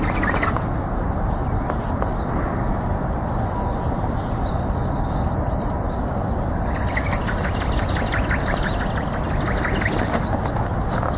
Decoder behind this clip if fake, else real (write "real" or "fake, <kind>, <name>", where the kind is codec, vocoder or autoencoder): real